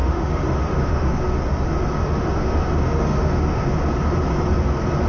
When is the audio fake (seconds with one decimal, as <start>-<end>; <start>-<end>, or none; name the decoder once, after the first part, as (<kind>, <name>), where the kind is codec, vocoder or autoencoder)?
0.0-1.2 (autoencoder, DAC-VAE); 2.0-3.6